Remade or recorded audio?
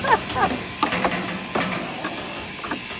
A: recorded